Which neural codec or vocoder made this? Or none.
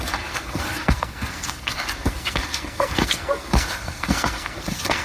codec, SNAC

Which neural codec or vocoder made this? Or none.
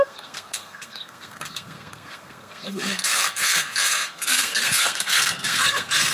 codec, SNAC